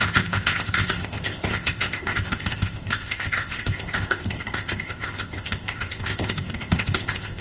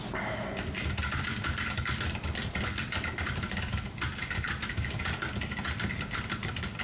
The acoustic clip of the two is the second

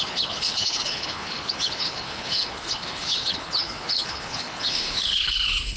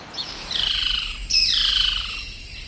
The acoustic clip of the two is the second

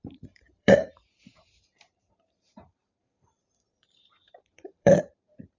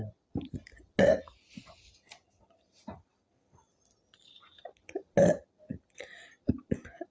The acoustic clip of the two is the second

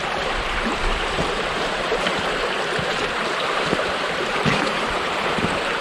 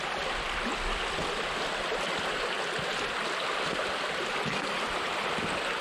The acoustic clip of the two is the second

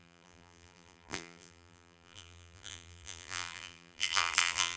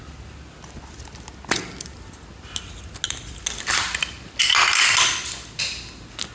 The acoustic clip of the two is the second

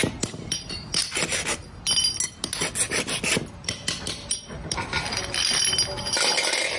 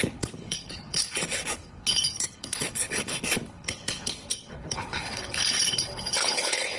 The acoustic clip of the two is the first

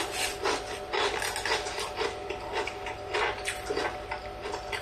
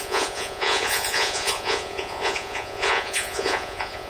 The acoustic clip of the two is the first